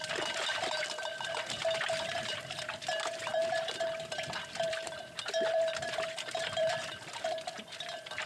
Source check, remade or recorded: remade